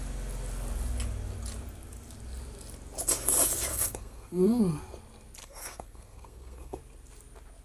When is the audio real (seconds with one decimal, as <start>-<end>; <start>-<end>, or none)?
0.0-3.7; 4.6-5.4; 6.8-7.6